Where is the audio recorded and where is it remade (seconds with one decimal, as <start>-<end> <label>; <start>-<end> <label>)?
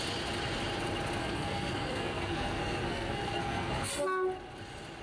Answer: 0.0-1.2 recorded; 1.2-3.9 remade; 3.9-5.0 recorded